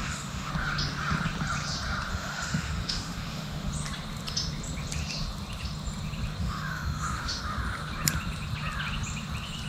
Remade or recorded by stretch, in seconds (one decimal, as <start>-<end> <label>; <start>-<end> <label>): 0.0-0.5 remade; 0.5-2.1 recorded; 2.1-3.7 remade; 3.7-6.4 recorded; 6.4-7.4 remade; 7.4-9.7 recorded